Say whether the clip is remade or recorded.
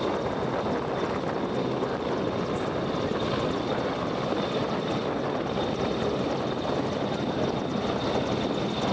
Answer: recorded